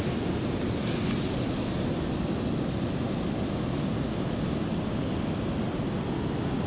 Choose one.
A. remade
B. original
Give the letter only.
B